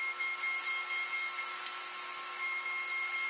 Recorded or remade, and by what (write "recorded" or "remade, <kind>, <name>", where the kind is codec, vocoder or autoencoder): recorded